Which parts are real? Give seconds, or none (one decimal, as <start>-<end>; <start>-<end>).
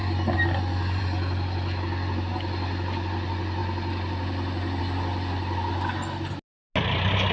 0.0-7.3